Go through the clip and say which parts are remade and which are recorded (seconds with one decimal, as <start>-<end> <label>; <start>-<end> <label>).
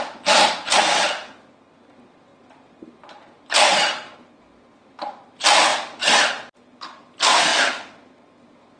0.0-8.8 recorded